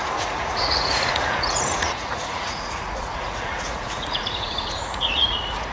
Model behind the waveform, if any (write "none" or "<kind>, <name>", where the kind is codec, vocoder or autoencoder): vocoder, Vocos